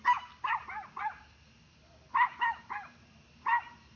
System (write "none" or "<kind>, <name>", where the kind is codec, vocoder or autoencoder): none